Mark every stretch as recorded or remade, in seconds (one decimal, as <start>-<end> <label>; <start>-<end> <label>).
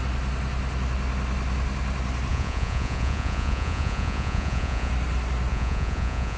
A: 0.0-2.3 recorded; 2.3-4.9 remade; 4.9-5.5 recorded; 5.5-6.4 remade